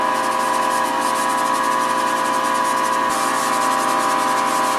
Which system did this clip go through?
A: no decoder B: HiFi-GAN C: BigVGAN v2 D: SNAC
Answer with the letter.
A